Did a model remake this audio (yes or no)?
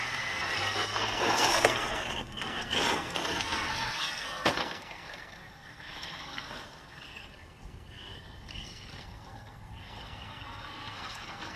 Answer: yes